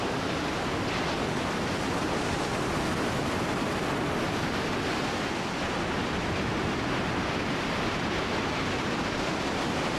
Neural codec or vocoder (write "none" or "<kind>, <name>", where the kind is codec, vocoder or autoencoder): none